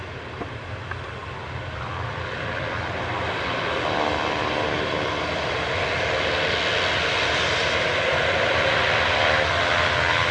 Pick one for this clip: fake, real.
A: real